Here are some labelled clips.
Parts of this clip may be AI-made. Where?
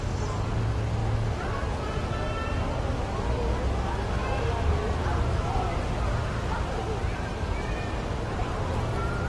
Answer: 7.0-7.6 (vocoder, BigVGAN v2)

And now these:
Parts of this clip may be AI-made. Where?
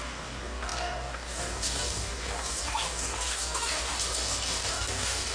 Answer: 0.0-5.3 (codec, DAC)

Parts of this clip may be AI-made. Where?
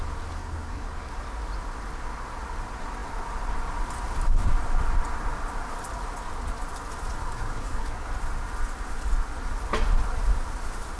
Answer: 0.4-1.1 (codec, DAC); 7.2-8.1